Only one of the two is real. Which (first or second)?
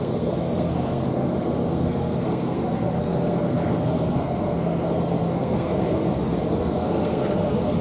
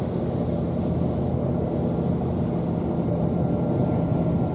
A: second